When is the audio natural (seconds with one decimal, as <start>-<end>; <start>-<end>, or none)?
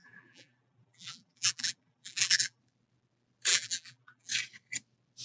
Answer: 2.6-3.5; 4.3-5.2